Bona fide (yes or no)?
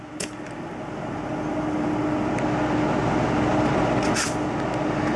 yes